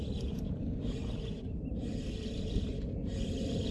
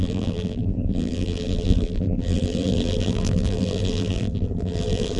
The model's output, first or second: second